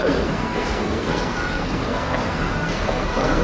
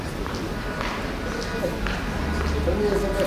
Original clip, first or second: second